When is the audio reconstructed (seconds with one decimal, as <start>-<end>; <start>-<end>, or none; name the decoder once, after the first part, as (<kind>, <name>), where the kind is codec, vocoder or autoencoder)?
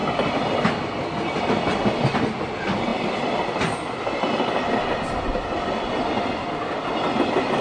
none